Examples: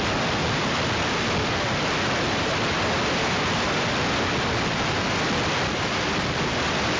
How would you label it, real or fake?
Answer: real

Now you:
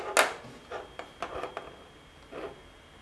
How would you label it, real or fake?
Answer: real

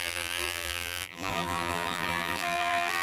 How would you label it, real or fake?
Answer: fake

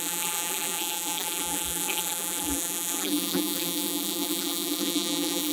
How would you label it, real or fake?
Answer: fake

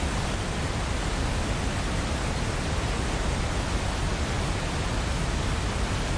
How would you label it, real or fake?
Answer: real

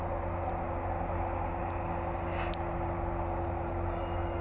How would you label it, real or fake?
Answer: real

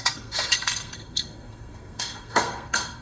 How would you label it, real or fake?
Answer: fake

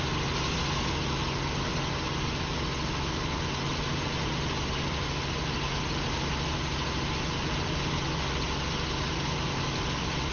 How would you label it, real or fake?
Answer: real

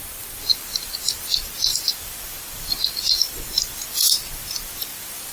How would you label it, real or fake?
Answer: fake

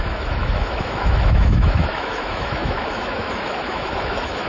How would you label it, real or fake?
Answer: fake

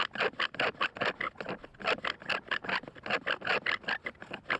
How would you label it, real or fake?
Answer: real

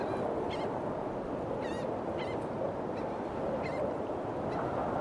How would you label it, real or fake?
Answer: real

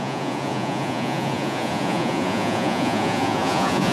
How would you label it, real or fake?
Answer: fake